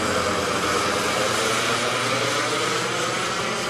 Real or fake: real